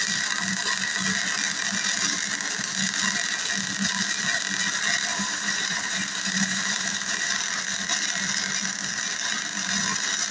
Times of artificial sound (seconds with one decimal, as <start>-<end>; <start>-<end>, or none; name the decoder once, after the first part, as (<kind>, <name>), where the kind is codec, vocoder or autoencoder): 5.1-7.3 (vocoder, BigVGAN v2)